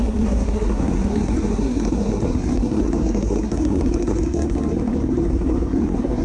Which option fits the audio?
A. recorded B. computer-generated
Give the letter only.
B